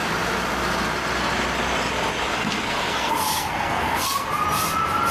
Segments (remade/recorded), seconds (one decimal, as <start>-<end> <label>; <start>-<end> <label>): 0.0-2.3 recorded; 2.3-4.3 remade; 4.3-5.1 recorded